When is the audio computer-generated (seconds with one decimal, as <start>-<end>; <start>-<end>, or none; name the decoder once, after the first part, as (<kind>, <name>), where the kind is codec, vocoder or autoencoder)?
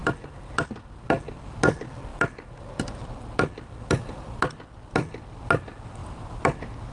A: none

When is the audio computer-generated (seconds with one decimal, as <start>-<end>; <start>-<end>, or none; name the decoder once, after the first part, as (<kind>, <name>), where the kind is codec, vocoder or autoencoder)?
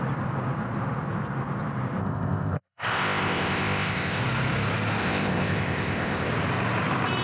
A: 2.0-4.2 (codec, ZipCodec); 5.0-6.3